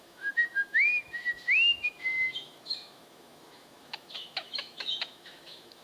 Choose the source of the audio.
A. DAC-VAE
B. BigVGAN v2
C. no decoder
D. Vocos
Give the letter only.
A